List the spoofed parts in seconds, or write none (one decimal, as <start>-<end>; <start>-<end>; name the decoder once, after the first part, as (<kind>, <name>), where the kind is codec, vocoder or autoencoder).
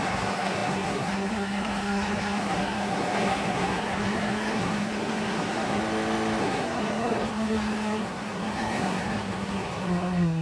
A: 0.0-5.8 (codec, SNAC); 6.4-10.4